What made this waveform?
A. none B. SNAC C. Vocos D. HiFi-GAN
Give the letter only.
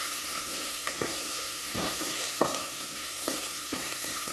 B